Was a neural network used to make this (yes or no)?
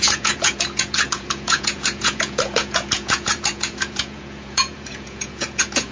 yes